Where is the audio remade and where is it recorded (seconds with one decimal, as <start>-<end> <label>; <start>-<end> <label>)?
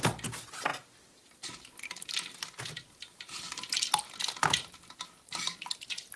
0.0-6.2 recorded